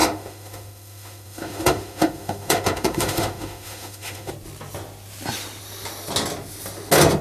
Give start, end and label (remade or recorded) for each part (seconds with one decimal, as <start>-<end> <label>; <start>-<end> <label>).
0.0-4.3 remade; 4.3-7.2 recorded